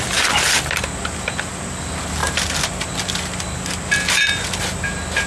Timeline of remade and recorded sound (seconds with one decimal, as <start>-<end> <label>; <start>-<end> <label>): 0.0-5.3 recorded